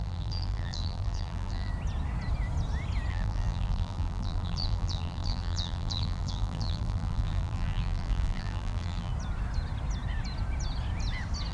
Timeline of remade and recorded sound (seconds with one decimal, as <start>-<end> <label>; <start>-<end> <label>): 0.0-1.7 remade; 1.7-3.1 recorded; 3.1-9.1 remade; 9.1-11.5 recorded